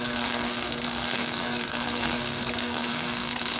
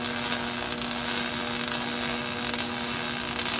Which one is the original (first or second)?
second